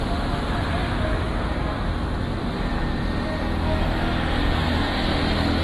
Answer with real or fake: real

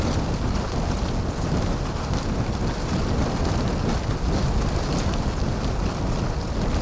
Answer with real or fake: real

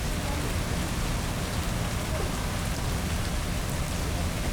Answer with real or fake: real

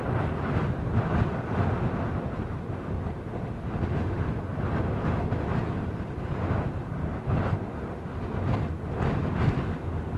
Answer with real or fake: real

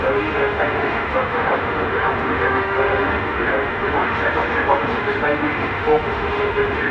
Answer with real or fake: fake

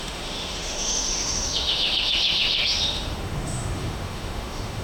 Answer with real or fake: fake